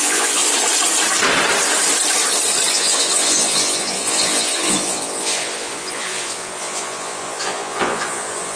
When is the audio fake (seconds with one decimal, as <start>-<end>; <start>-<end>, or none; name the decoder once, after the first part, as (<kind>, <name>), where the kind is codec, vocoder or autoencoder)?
0.0-0.4 (vocoder, Vocos); 2.7-8.6